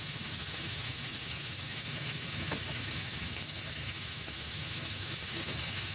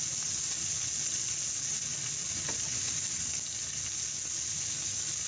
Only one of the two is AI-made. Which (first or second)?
first